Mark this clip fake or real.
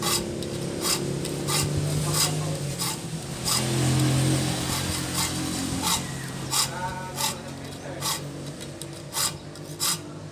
real